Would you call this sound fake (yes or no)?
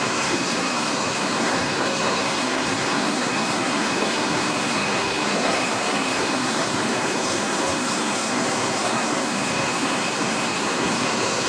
yes